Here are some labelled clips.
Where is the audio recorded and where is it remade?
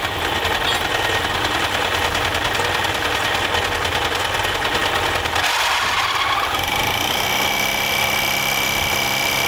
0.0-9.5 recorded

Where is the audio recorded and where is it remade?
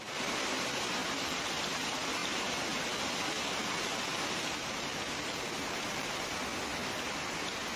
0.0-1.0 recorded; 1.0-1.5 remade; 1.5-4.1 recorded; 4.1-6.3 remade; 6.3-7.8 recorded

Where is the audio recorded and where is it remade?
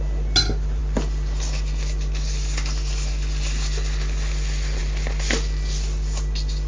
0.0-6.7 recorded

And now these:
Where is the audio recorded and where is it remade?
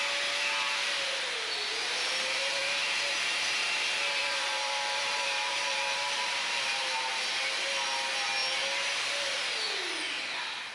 0.0-1.7 recorded; 1.7-6.9 remade; 6.9-10.7 recorded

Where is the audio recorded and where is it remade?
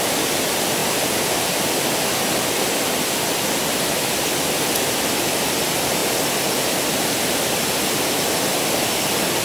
0.0-9.4 recorded